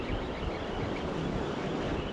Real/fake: real